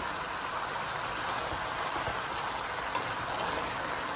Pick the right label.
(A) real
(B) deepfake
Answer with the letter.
A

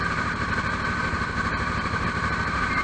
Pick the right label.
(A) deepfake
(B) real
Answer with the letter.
A